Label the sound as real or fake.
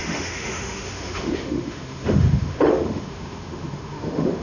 fake